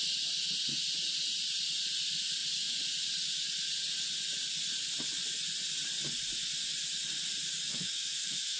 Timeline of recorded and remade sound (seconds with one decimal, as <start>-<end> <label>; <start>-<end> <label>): 0.0-7.7 recorded; 7.7-8.6 remade